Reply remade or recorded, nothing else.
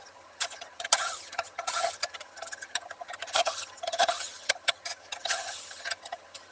remade